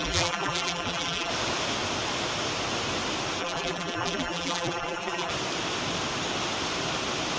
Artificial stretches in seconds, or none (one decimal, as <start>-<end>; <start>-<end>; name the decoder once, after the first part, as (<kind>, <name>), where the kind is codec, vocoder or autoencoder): 0.0-1.3 (vocoder, BigVGAN v2); 3.4-5.3

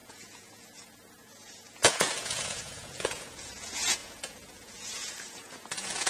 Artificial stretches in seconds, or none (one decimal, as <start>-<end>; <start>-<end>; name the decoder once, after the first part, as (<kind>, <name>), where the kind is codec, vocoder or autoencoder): 0.0-6.1 (vocoder, Vocos)

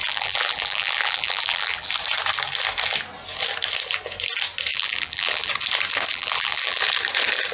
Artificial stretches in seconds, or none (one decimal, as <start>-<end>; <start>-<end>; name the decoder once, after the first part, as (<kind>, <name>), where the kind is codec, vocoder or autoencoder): 0.0-1.9 (vocoder, BigVGAN v2); 4.7-5.5; 6.1-6.8

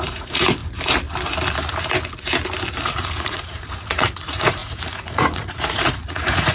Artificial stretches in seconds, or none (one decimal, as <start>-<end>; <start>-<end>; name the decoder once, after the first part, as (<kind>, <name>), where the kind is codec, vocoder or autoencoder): 0.0-0.6 (vocoder, Vocos); 2.8-6.5

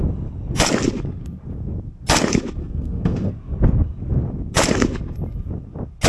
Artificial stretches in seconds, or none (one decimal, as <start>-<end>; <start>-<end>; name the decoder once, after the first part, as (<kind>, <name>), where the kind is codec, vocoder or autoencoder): 2.6-3.3 (codec, SNAC)

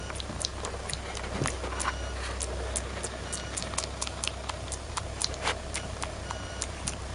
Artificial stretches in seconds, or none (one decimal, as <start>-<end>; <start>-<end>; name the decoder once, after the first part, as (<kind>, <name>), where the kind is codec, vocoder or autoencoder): 0.0-0.5 (vocoder, BigVGAN v2); 4.8-7.1

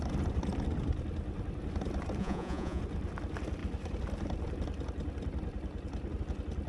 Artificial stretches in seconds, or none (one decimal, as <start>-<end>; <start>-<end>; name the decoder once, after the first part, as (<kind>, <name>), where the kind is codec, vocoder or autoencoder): 2.2-2.8 (vocoder, Vocos)